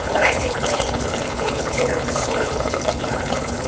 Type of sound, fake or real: fake